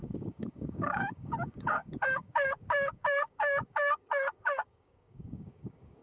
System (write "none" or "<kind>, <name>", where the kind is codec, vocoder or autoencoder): codec, DAC